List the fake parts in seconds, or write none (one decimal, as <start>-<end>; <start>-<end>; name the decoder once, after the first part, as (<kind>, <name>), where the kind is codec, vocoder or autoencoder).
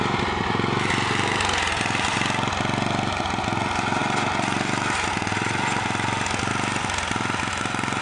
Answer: none